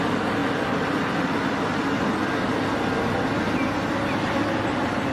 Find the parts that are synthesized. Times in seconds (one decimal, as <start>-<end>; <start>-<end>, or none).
none